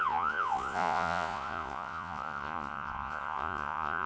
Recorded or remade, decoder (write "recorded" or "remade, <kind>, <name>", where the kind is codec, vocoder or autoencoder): remade, vocoder, Vocos